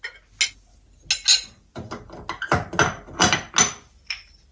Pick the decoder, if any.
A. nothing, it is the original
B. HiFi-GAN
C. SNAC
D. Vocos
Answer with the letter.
A